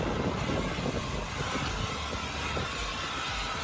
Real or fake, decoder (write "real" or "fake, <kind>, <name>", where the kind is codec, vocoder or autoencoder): real